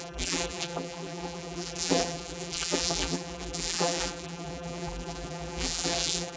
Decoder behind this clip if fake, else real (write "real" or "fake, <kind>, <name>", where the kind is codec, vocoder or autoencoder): fake, vocoder, BigVGAN v2